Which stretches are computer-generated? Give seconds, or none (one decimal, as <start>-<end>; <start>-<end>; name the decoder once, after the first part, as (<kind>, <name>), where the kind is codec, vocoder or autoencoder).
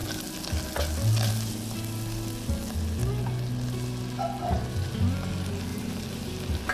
5.7-6.3 (vocoder, BigVGAN v2)